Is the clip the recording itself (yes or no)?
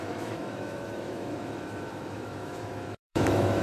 no